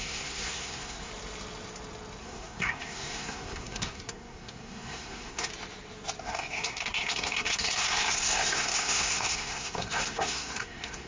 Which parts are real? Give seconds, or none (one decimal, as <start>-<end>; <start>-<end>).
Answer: 1.1-2.2; 5.5-6.2